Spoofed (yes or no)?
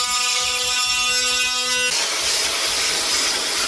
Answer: no